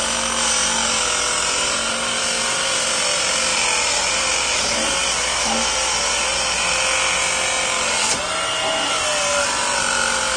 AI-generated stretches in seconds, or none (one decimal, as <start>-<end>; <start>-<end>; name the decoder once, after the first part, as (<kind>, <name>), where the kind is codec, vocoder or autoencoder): none